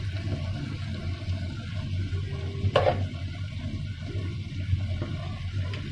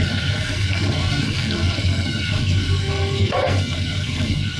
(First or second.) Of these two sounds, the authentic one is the first